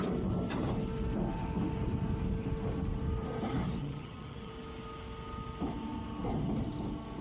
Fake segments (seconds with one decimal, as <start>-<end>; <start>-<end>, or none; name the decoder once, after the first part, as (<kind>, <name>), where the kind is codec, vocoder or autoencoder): 3.8-4.5 (vocoder, HiFi-GAN)